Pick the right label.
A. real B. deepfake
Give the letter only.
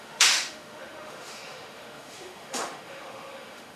B